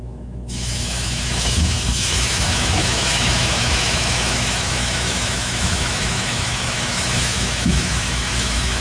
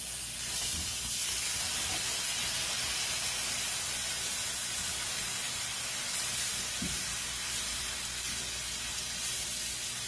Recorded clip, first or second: second